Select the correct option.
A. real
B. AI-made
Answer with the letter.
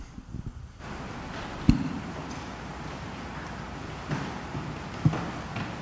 A